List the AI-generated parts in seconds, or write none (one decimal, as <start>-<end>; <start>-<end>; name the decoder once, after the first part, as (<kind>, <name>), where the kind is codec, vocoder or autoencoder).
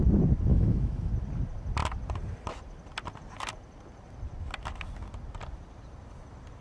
0.5-1.1 (autoencoder, DAC-VAE)